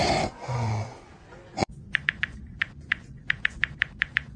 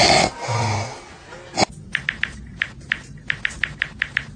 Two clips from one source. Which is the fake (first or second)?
first